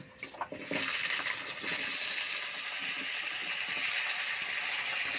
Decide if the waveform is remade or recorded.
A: recorded